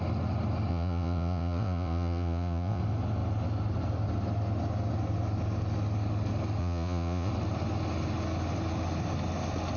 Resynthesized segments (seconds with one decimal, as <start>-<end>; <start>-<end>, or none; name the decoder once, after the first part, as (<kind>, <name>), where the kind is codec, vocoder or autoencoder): 0.7-2.8 (vocoder, Vocos); 6.6-7.3